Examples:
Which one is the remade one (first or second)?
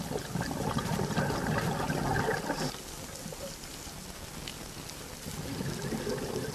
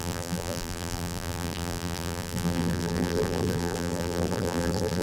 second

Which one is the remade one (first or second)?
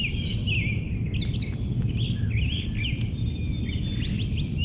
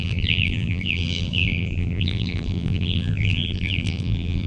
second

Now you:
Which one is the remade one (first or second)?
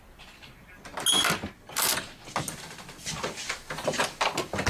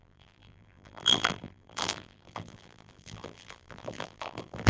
second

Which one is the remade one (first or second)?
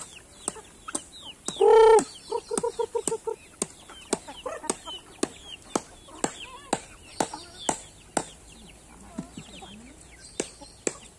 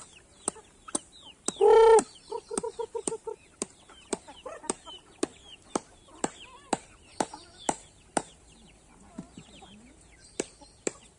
second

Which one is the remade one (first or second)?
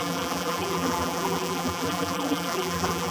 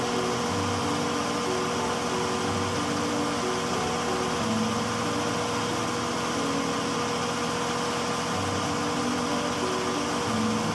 first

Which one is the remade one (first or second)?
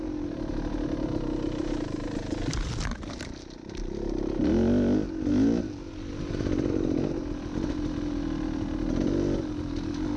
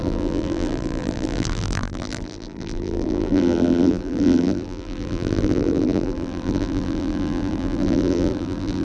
second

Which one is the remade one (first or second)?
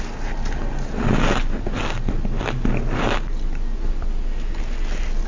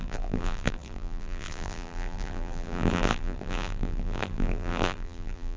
second